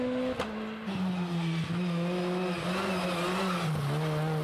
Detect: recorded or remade recorded